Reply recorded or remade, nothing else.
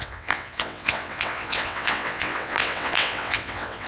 remade